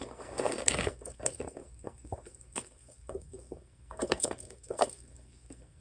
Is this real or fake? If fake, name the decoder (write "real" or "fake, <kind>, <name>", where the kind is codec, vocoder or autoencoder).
fake, codec, SNAC